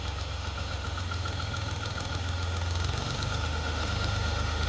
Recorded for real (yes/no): no